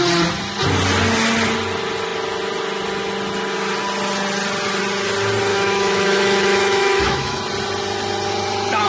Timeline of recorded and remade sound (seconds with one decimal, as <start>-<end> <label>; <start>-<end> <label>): 0.0-5.5 recorded; 5.5-7.4 remade; 7.4-8.9 recorded